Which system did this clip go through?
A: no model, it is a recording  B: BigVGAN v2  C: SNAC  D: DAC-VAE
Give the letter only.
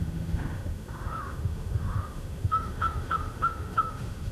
D